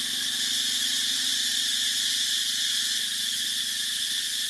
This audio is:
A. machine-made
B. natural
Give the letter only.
B